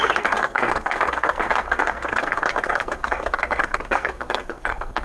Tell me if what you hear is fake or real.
fake